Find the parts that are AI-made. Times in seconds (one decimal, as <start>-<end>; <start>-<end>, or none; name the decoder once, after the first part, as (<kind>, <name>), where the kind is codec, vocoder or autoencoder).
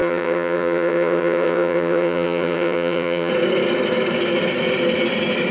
0.0-3.3 (vocoder, HiFi-GAN)